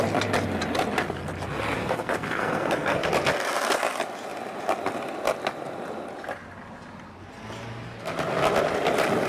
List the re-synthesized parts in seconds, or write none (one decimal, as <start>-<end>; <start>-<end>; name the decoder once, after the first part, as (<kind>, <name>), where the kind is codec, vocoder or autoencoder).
1.8-3.1 (codec, SNAC)